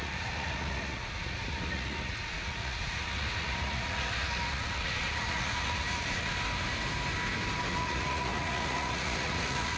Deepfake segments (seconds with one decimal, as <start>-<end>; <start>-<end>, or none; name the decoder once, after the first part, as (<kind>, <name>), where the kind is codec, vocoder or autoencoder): 0.0-6.3 (vocoder, Vocos); 7.7-9.8